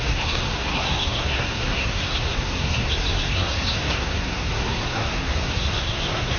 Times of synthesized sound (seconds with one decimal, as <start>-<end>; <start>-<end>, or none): 0.0-6.4